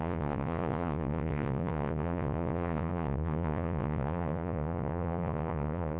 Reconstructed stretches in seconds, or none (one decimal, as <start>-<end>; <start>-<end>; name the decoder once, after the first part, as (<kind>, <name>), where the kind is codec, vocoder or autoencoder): 0.0-6.0 (vocoder, Vocos)